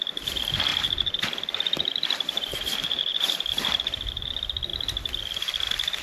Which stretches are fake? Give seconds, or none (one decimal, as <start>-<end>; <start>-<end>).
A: 0.7-4.3